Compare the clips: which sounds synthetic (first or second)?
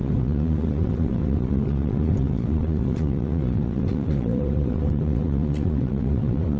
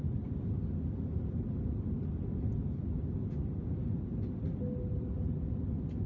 first